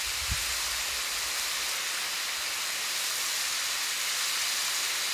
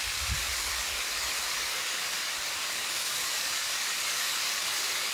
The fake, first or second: second